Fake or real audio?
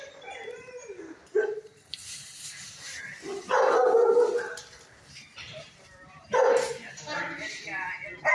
fake